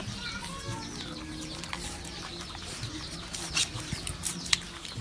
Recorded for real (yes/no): yes